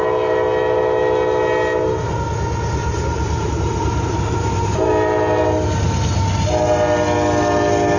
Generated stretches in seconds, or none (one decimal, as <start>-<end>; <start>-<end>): 2.8-4.9